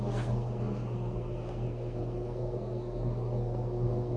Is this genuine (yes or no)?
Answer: no